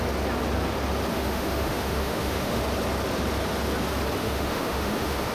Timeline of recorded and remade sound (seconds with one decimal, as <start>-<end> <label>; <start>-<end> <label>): 0.0-1.1 recorded; 1.1-2.6 remade; 2.6-4.2 recorded; 4.2-5.3 remade